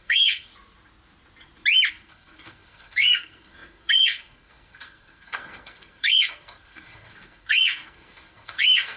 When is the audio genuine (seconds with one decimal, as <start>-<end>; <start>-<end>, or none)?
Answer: 0.5-1.9